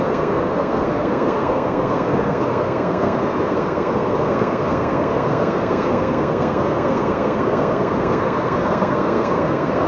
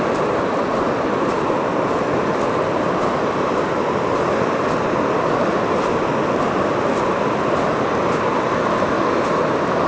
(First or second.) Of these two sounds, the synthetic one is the first